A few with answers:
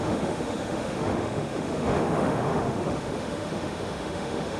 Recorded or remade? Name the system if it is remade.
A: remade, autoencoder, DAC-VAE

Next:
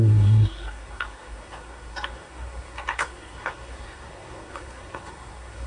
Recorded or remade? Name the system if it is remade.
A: remade, codec, SNAC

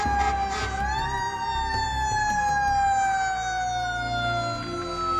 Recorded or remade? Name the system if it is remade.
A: recorded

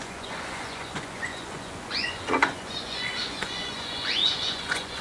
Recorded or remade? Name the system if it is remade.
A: remade, vocoder, Vocos